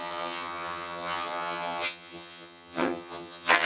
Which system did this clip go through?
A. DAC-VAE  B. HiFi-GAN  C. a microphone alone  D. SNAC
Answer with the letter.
B